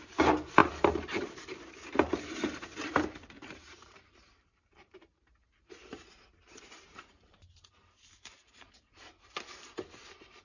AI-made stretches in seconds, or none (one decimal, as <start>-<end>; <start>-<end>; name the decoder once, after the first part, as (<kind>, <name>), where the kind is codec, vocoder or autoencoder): 0.0-10.4 (vocoder, BigVGAN v2)